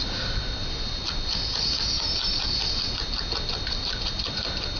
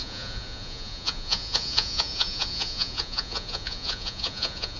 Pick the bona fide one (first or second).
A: first